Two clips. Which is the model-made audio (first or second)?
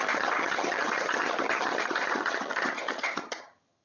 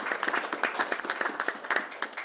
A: first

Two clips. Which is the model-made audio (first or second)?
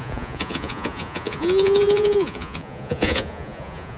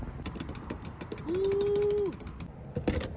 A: first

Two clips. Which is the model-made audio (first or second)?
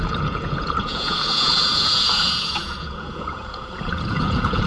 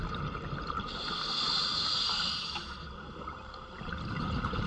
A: first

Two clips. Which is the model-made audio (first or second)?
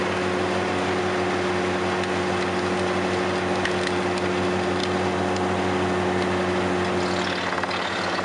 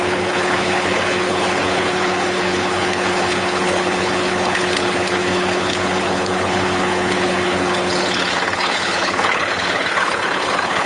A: second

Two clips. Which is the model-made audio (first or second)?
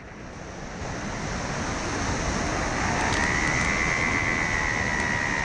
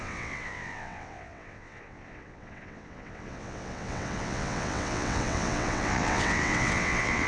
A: second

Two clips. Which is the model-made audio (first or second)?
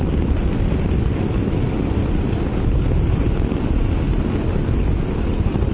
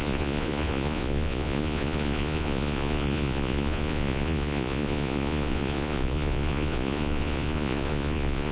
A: second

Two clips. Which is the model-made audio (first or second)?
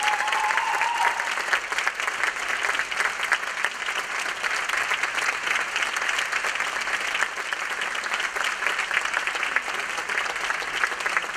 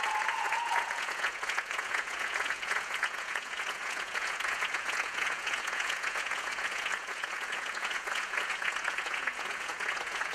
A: second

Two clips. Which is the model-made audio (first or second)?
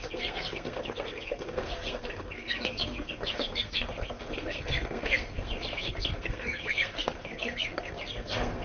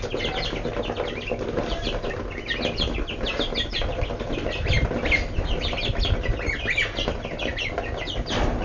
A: first